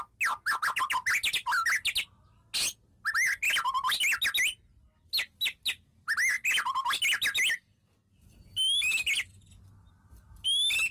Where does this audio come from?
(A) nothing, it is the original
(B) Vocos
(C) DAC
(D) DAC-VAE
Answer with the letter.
A